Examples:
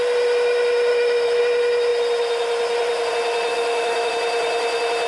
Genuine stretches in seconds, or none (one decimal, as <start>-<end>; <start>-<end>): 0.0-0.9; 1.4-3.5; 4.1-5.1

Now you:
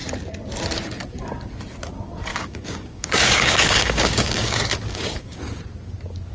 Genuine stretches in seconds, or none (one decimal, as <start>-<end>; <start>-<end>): 0.0-2.3; 5.6-6.3

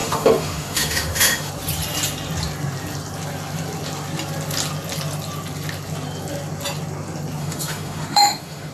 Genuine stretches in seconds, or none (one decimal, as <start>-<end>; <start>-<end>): 1.5-7.4

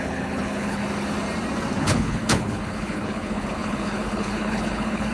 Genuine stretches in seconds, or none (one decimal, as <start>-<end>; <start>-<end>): 0.8-1.8

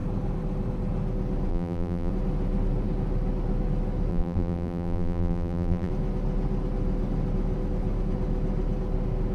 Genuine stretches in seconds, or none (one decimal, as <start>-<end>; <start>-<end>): 0.0-1.5; 2.1-4.1; 5.9-9.3